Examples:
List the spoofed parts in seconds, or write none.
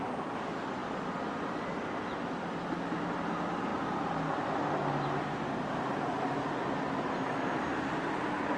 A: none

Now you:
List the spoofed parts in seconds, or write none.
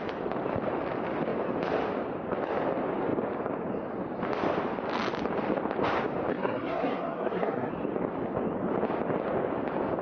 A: 6.3-7.7 (codec, SNAC)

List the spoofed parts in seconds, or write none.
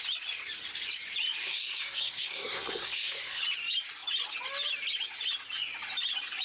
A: 1.4-3.4 (codec, SNAC)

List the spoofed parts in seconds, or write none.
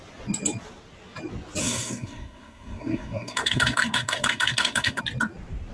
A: 1.6-5.0 (codec, SNAC)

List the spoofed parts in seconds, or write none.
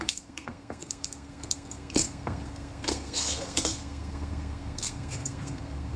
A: 0.0-6.0 (codec, SNAC)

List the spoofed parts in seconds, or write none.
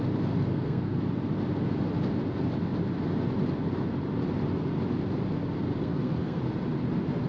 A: 0.5-1.0 (codec, SNAC); 5.8-6.4